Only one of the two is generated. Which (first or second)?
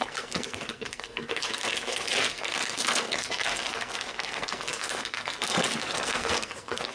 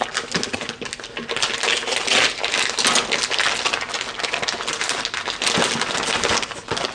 first